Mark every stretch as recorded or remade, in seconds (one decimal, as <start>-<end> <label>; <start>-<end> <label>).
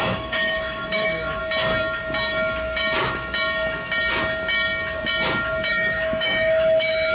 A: 0.0-1.4 remade; 1.4-5.7 recorded; 5.7-7.1 remade